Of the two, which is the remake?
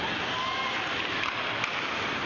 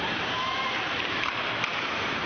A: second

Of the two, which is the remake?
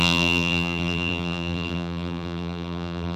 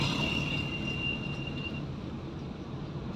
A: first